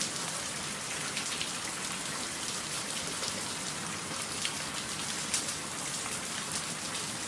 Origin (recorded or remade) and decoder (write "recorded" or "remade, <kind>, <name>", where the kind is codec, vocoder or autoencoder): recorded